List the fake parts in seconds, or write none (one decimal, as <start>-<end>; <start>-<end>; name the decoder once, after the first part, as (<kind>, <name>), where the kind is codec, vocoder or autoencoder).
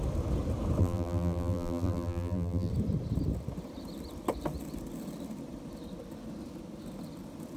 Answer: 0.8-2.7 (vocoder, BigVGAN v2)